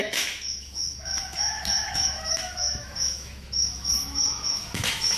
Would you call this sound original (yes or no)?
no